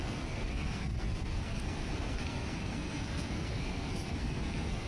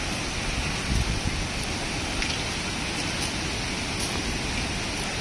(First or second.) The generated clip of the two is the first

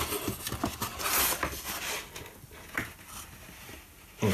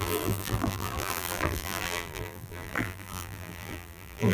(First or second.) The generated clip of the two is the second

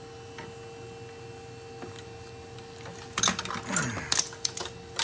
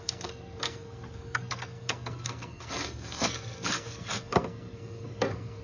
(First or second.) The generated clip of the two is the second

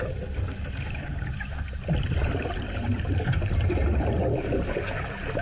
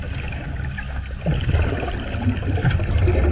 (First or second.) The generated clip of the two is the first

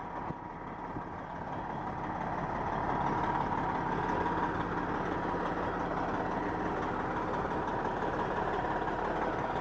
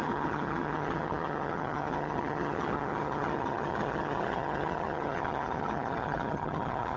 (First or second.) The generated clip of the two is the second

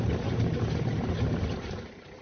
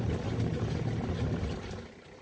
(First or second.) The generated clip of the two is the first